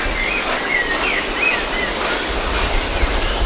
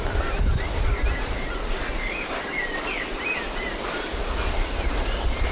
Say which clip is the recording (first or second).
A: first